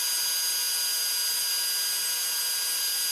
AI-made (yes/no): no